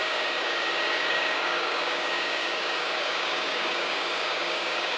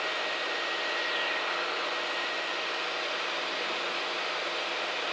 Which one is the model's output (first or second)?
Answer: first